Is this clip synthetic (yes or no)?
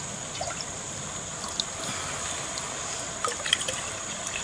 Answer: yes